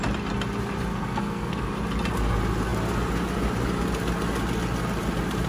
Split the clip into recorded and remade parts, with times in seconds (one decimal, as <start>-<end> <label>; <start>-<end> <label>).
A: 0.0-0.9 recorded; 0.9-1.7 remade; 1.7-5.5 recorded